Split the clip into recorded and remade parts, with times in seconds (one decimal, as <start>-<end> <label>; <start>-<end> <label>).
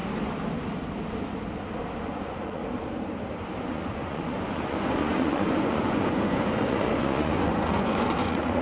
0.0-2.0 recorded; 2.0-2.6 remade; 2.6-3.6 recorded; 3.6-8.6 remade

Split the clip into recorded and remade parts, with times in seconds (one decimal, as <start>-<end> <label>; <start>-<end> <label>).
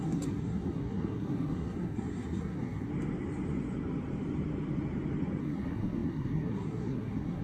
0.0-2.9 remade; 2.9-5.4 recorded; 5.4-7.4 remade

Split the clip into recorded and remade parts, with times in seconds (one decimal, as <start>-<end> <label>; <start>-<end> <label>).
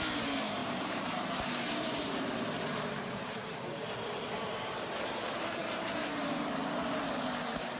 0.0-7.8 remade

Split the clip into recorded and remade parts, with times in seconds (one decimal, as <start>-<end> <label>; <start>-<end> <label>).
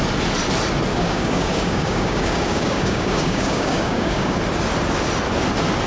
0.0-0.9 recorded; 0.9-4.4 remade; 4.4-5.9 recorded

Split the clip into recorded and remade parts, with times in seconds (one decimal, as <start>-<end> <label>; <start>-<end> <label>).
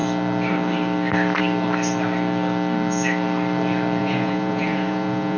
0.0-4.0 recorded; 4.0-5.4 remade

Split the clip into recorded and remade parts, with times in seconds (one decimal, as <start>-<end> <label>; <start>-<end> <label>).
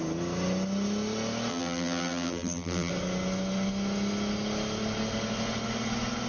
0.0-1.5 recorded; 1.5-2.9 remade; 2.9-6.3 recorded